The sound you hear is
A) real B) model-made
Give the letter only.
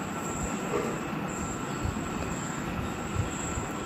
A